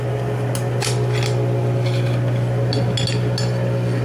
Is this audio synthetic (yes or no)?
no